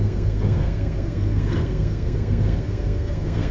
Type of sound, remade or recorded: remade